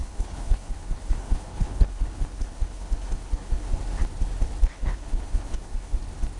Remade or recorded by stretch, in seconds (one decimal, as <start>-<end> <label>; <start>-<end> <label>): 0.0-3.8 remade; 3.8-4.6 recorded; 4.6-6.0 remade; 6.0-6.4 recorded